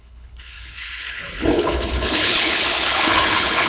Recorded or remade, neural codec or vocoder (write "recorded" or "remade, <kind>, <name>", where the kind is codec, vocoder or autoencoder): remade, codec, HILCodec